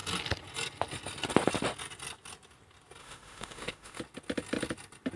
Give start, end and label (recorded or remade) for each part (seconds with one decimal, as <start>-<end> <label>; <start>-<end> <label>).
0.0-3.0 recorded; 3.0-4.0 remade; 4.0-5.2 recorded